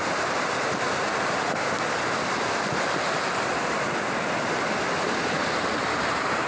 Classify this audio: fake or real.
real